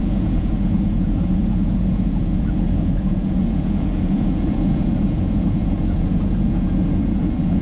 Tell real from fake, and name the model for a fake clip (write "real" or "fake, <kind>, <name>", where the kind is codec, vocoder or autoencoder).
fake, vocoder, Vocos